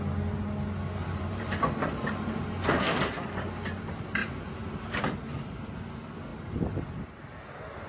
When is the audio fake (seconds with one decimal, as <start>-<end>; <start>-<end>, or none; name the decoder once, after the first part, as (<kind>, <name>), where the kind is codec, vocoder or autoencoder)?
1.0-1.6 (vocoder, BigVGAN v2); 4.2-5.8; 6.3-7.2